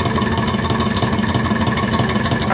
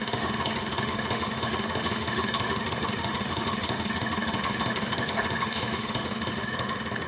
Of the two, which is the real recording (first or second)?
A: first